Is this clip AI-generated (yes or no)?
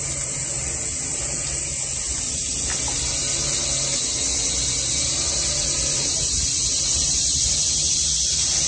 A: no